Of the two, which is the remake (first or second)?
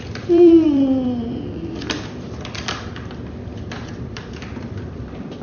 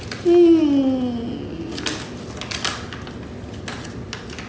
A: first